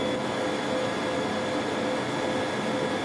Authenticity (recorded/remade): recorded